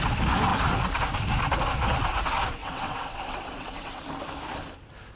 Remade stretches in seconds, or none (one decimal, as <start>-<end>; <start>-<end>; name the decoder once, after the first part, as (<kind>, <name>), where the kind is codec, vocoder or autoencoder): 2.6-4.0 (vocoder, WaveNeXt)